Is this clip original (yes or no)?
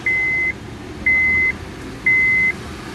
yes